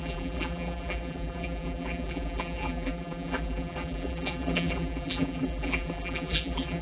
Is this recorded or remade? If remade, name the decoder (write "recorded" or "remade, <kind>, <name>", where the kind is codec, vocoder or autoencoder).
remade, vocoder, BigVGAN v2